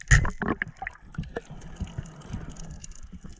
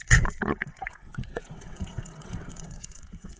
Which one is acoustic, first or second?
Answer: first